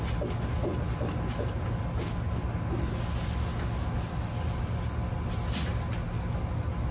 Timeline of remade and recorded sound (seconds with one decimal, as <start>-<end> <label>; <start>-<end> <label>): 0.0-6.9 recorded